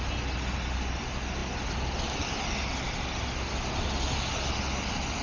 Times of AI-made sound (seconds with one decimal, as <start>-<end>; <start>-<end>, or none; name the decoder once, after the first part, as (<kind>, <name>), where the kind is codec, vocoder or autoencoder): none